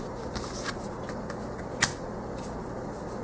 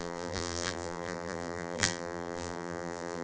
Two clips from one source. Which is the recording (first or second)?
first